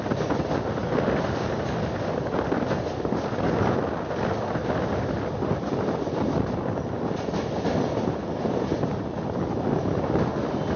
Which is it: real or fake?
real